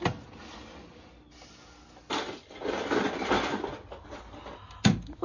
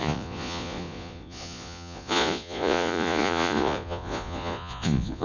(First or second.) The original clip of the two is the first